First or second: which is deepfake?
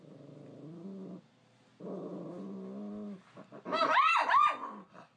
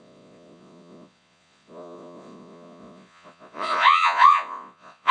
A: second